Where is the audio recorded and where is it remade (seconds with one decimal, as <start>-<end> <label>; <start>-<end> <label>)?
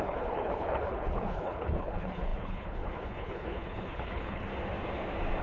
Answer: 0.0-4.5 remade; 4.5-5.4 recorded